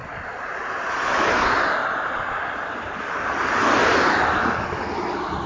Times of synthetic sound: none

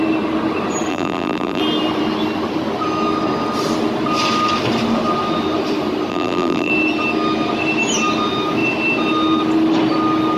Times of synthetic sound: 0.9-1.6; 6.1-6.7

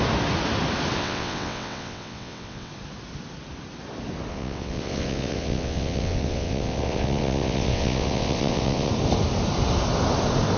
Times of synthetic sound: 1.0-2.7; 4.3-8.9

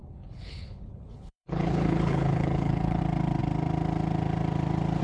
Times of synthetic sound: 0.0-3.0